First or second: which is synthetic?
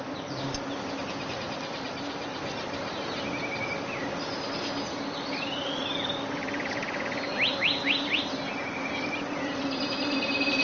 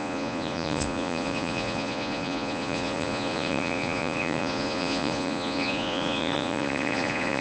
second